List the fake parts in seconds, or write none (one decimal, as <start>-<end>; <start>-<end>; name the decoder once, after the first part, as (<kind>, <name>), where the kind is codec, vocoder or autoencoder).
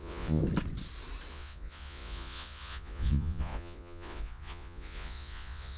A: 0.0-0.4 (vocoder, Vocos); 1.3-5.8